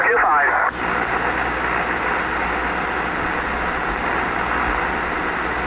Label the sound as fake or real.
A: real